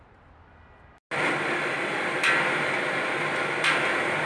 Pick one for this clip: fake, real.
real